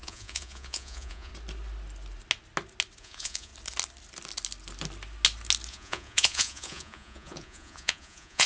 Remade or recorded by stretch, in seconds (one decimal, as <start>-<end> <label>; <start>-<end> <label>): 0.0-1.3 remade; 1.3-3.0 recorded; 3.0-3.5 remade; 3.5-5.7 recorded; 5.7-8.5 remade